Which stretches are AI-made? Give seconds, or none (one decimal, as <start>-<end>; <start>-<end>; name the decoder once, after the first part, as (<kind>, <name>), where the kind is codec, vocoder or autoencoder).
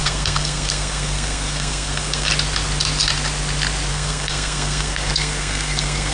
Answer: 0.0-2.3 (codec, SNAC); 3.9-6.1